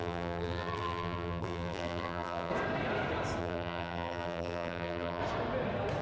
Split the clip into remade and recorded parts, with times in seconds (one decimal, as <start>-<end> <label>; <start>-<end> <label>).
0.0-2.5 remade; 2.5-3.4 recorded; 3.4-5.2 remade; 5.2-6.0 recorded